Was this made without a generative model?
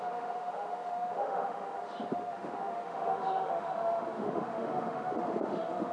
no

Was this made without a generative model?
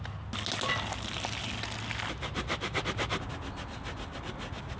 yes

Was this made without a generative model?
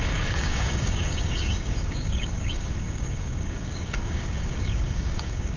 no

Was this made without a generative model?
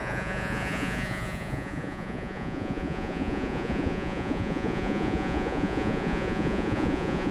no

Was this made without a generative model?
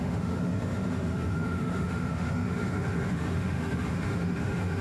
no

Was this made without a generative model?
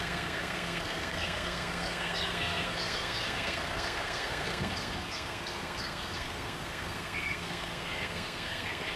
no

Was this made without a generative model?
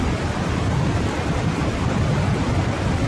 no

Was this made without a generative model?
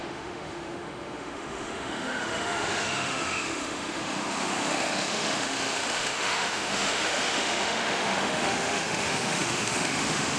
no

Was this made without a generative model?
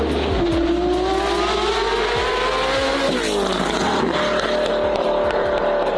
yes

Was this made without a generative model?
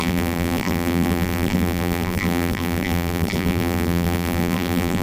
no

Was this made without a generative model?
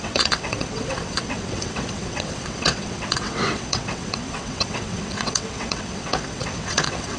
no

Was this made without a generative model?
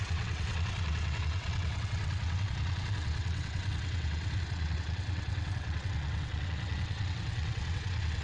no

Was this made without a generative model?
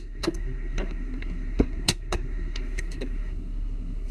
no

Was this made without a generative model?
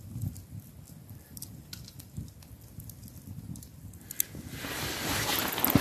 yes